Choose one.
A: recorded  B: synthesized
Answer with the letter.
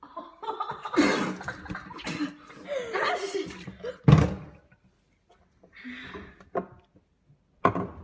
A